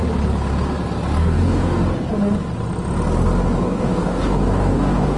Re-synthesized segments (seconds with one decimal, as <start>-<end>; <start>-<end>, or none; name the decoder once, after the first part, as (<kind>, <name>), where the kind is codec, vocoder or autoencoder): 1.2-1.8 (codec, DAC); 3.6-5.2